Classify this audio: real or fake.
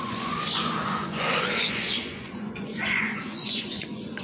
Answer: fake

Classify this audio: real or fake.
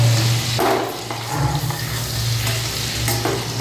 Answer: real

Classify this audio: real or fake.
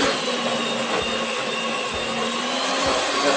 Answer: real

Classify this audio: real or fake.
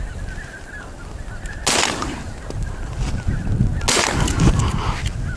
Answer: real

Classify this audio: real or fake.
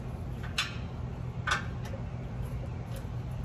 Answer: real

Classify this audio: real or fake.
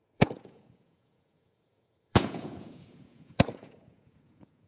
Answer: fake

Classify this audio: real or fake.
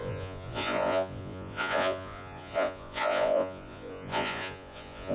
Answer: fake